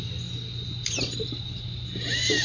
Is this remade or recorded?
recorded